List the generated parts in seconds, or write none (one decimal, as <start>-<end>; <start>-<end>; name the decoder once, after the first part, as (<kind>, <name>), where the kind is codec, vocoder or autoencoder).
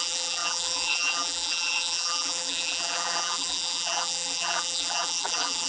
0.0-5.7 (vocoder, BigVGAN v2)